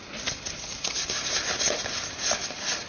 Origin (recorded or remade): recorded